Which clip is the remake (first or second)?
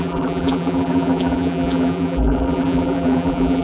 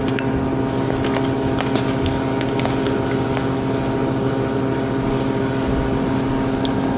first